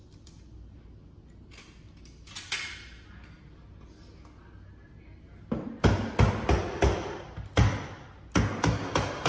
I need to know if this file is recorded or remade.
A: recorded